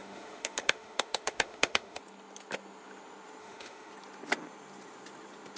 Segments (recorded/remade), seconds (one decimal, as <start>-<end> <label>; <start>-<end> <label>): 0.0-2.0 remade; 2.0-3.4 recorded; 3.4-3.9 remade; 3.9-5.6 recorded